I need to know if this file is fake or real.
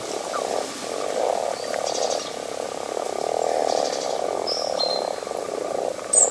real